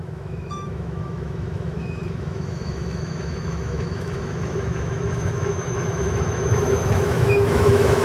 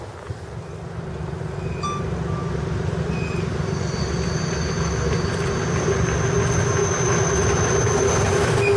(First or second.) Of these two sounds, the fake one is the first